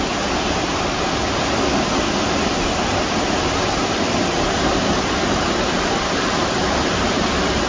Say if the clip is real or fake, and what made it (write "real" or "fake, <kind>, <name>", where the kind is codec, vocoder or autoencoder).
fake, vocoder, BigVGAN v2